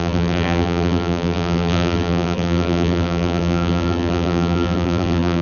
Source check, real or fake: fake